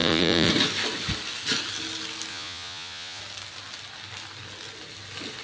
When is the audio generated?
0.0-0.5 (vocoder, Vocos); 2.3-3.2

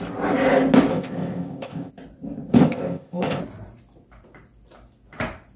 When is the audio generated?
0.9-1.9 (codec, ZipCodec); 2.5-3.4

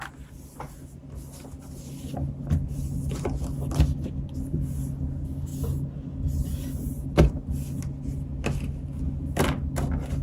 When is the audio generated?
none

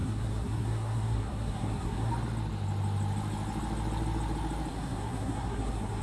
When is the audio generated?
0.0-2.1 (codec, SNAC); 4.7-6.0

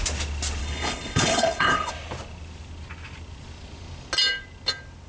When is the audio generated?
0.6-1.9 (codec, HILCodec)

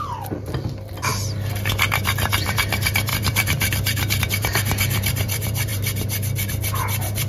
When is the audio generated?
0.0-1.1 (vocoder, BigVGAN v2); 1.7-5.7; 6.5-7.3

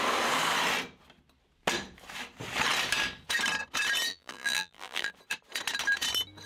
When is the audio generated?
4.1-5.1 (vocoder, BigVGAN v2)